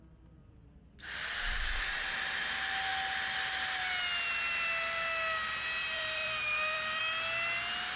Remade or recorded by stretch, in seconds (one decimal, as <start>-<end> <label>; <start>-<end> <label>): 0.0-0.4 recorded; 0.4-1.6 remade; 1.6-5.8 recorded; 5.8-7.0 remade; 7.0-8.0 recorded